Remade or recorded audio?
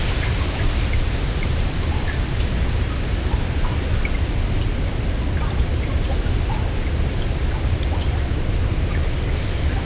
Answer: recorded